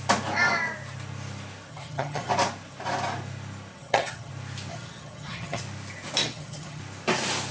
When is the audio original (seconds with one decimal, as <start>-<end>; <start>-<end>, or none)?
0.0-1.7; 2.3-3.7; 4.3-4.7; 5.6-6.2; 6.8-7.5

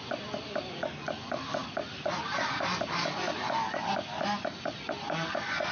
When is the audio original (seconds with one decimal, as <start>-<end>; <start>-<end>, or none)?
0.0-5.7

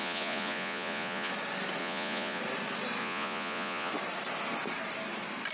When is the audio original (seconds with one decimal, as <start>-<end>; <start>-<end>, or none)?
1.3-1.8; 2.4-3.0; 3.9-5.5

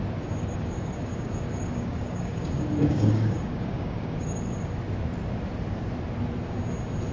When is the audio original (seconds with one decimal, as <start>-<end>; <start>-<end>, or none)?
0.0-0.4; 4.7-7.1

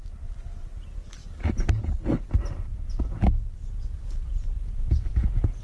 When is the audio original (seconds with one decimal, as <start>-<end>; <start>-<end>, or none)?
0.0-2.7; 3.2-4.6

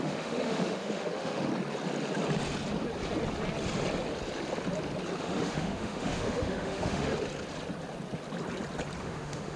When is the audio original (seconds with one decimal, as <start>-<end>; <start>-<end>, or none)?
1.5-5.2; 7.1-9.0

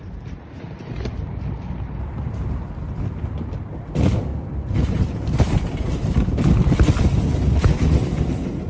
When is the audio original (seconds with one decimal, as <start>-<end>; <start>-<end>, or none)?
0.0-8.7

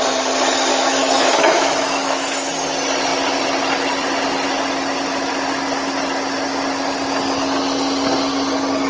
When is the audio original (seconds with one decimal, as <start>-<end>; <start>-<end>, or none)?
0.0-0.7; 2.5-8.9